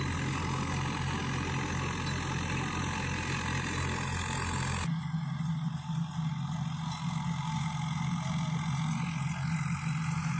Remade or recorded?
recorded